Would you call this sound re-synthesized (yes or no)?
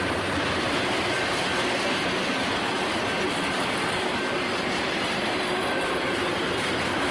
yes